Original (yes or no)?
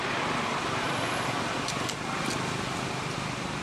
yes